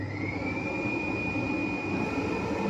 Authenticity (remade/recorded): recorded